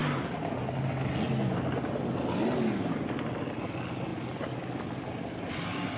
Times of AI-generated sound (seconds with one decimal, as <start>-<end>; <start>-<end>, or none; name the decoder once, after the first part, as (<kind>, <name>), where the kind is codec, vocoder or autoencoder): none